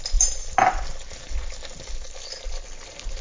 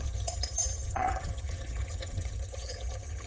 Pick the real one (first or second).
first